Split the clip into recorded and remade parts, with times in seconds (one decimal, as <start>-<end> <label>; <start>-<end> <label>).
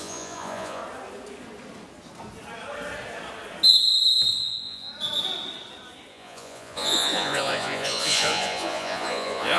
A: 0.0-0.8 remade; 0.8-4.4 recorded; 4.4-4.9 remade; 4.9-6.1 recorded; 6.1-9.6 remade